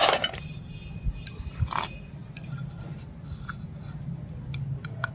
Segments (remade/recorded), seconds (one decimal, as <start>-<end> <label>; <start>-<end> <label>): 0.0-5.1 recorded